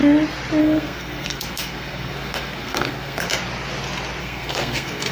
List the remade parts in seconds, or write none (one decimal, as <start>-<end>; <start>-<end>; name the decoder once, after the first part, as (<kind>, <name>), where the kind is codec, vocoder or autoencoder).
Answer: 0.6-3.3 (codec, SNAC); 4.2-5.1